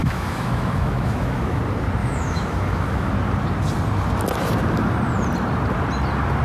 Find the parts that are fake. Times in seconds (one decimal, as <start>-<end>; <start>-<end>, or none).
0.0-1.6; 2.0-3.1